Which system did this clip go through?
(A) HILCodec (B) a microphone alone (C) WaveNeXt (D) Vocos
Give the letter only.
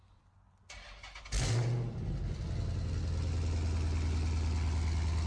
B